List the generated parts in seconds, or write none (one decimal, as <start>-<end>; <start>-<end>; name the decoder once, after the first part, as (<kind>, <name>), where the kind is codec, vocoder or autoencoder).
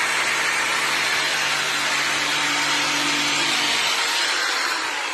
none